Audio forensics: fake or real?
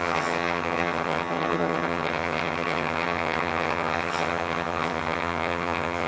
fake